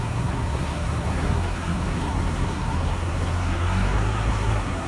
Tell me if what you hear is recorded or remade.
remade